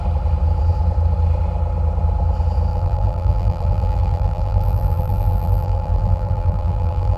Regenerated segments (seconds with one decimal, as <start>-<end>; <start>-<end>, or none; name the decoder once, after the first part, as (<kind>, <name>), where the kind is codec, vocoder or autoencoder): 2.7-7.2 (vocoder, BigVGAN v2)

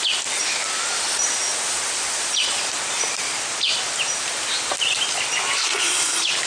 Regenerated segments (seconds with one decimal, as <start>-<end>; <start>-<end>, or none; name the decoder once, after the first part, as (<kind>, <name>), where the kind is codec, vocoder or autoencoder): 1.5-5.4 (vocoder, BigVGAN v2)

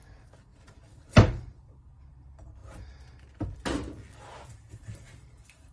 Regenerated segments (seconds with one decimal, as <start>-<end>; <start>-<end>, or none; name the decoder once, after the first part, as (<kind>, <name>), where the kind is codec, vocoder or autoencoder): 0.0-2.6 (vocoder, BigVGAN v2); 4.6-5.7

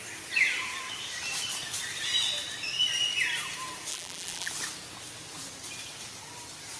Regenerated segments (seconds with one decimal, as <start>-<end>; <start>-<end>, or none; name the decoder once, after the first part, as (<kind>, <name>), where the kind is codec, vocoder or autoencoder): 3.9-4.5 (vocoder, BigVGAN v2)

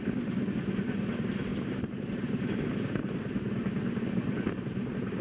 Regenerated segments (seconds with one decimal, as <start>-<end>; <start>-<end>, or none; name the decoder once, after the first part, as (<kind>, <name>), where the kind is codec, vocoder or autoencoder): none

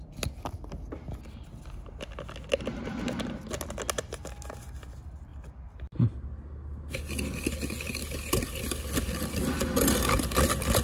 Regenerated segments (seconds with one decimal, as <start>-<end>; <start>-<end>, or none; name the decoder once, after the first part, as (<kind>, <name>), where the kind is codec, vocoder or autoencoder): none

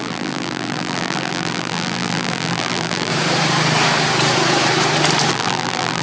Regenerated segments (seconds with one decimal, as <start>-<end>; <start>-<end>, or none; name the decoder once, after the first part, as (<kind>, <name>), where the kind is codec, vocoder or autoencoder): 0.0-3.1 (vocoder, BigVGAN v2); 5.3-6.0